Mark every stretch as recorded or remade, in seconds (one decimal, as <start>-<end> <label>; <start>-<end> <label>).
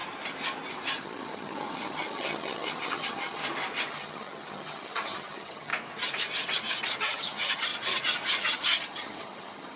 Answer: 0.0-1.0 recorded; 1.0-3.4 remade; 3.4-3.9 recorded; 3.9-5.7 remade; 5.7-7.0 recorded; 7.0-7.7 remade; 7.7-8.4 recorded; 8.4-9.8 remade